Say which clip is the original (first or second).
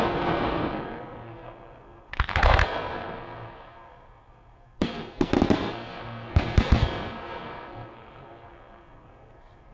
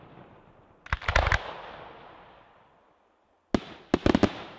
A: second